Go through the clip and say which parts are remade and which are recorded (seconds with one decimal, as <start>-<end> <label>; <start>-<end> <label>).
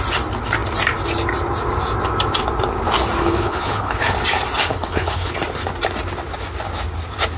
0.0-3.2 recorded; 3.2-4.0 remade; 4.0-4.7 recorded; 4.7-5.3 remade; 5.3-7.4 recorded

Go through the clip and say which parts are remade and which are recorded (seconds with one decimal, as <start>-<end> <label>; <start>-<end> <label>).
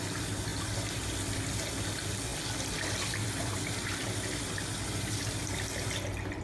0.0-6.4 recorded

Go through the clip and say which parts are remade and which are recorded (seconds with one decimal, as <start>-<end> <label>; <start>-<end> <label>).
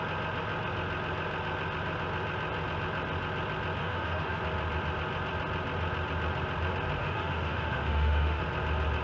0.0-3.8 recorded; 3.8-4.4 remade; 4.4-7.0 recorded; 7.0-8.4 remade; 8.4-9.0 recorded